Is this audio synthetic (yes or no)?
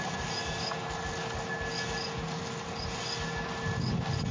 no